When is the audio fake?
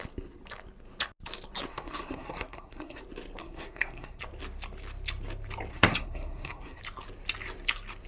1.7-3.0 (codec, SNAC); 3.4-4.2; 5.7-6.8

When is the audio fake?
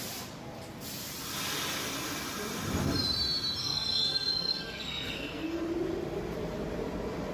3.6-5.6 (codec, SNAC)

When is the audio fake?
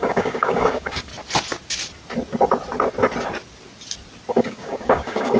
0.0-1.1 (codec, DAC); 4.3-5.4